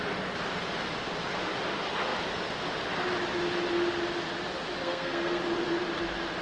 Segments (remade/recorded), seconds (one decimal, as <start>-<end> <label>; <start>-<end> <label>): 0.0-4.8 recorded; 4.8-5.4 remade; 5.4-6.4 recorded